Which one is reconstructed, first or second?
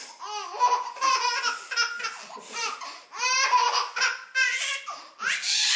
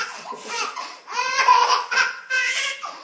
second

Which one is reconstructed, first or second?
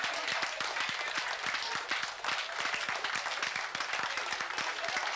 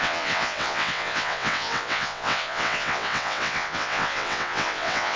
second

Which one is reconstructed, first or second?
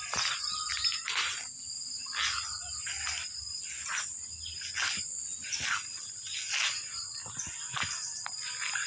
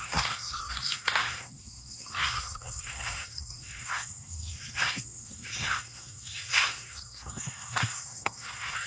second